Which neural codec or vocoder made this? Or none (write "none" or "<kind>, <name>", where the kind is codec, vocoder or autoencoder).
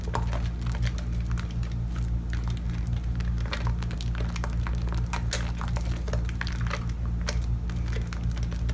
none